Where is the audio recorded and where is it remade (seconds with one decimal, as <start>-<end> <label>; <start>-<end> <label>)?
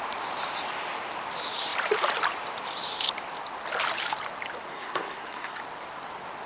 0.0-4.7 recorded; 4.7-5.6 remade; 5.6-6.5 recorded